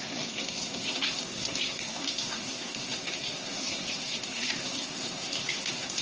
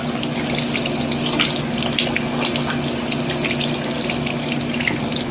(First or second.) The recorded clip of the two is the second